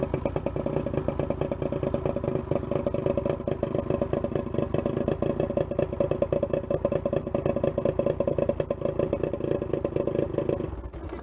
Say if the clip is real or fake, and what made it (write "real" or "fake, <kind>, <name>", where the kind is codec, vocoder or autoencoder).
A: real